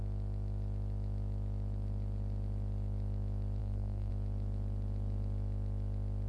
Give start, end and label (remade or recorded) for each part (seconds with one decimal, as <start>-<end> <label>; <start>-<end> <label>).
0.0-3.6 recorded; 3.6-4.1 remade; 4.1-6.3 recorded